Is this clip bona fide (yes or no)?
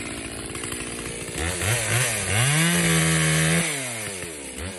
yes